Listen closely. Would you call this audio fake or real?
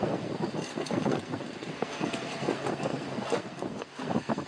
fake